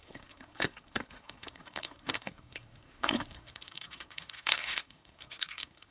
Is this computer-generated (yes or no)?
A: yes